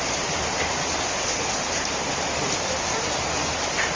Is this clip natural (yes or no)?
no